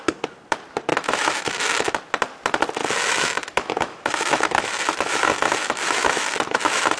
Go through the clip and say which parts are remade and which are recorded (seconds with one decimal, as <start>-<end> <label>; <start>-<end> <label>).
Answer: 0.0-0.9 recorded; 0.9-2.0 remade; 2.0-2.8 recorded; 2.8-7.0 remade